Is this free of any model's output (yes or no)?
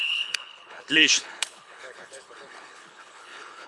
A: no